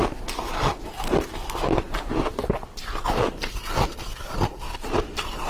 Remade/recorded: recorded